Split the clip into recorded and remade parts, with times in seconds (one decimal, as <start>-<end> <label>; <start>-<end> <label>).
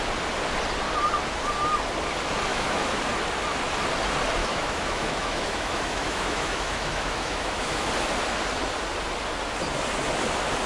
0.0-2.5 recorded; 2.5-3.0 remade; 3.0-4.4 recorded; 4.4-7.9 remade; 7.9-10.7 recorded